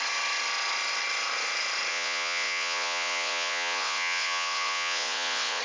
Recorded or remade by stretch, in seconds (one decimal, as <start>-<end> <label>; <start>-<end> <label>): 0.0-1.9 recorded; 1.9-5.6 remade